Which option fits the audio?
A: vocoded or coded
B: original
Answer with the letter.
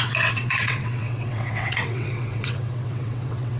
A